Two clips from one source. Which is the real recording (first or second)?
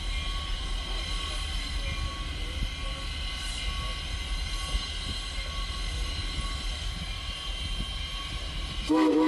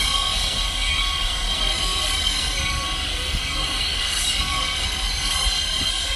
first